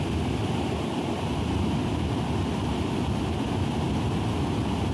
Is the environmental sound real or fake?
real